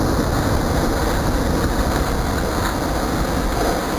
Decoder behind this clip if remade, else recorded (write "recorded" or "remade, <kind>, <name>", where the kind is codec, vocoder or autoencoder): recorded